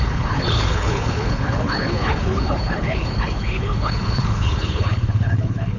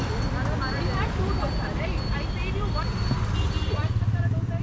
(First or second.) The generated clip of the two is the first